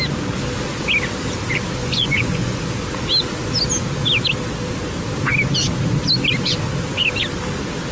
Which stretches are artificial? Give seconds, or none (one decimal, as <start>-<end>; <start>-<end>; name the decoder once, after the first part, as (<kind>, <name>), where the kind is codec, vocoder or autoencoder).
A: 1.8-2.6 (vocoder, Vocos)